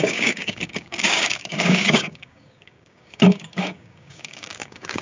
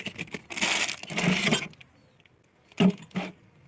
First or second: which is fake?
first